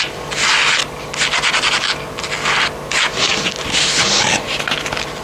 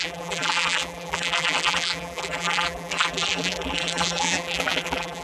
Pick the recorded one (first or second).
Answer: first